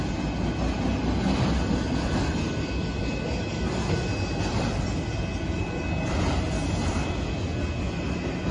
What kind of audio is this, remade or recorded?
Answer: recorded